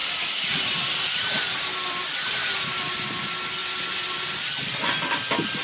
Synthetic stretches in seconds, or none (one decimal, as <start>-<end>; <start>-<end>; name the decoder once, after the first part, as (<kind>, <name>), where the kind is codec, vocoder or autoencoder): 0.0-2.3 (vocoder, BigVGAN v2); 3.6-4.4

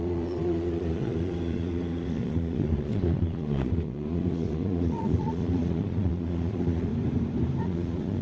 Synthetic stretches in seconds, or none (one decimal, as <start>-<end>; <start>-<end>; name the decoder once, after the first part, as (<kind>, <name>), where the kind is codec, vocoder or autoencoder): 0.0-6.9 (vocoder, Vocos); 7.6-8.2

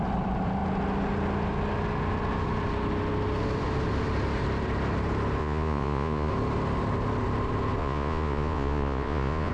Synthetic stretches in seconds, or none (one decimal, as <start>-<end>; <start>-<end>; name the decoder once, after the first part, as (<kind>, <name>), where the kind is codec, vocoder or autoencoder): 5.4-6.3 (vocoder, Vocos); 7.8-9.5

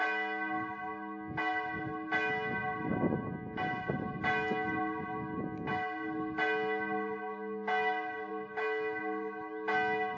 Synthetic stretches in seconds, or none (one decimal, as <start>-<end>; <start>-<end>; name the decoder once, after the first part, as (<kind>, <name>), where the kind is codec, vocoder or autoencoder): none

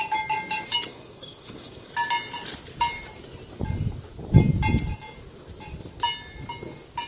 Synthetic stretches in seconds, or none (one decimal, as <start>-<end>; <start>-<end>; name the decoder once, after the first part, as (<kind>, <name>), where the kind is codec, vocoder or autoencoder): 0.9-1.9 (autoencoder, DAC-VAE)

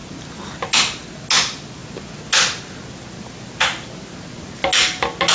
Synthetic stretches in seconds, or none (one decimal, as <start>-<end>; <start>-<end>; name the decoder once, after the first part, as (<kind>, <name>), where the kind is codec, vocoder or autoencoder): none

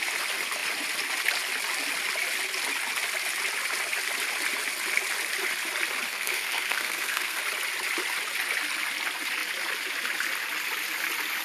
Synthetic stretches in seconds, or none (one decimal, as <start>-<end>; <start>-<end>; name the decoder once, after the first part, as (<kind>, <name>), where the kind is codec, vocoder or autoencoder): 6.1-7.4 (codec, SNAC)

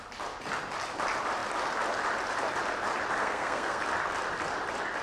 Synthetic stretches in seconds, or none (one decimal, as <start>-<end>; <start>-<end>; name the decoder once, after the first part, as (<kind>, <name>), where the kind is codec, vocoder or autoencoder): 3.2-3.8 (codec, SNAC)